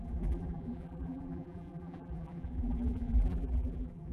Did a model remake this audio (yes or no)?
yes